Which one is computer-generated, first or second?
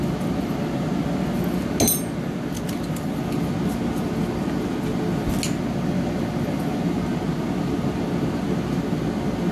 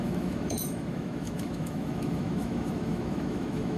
second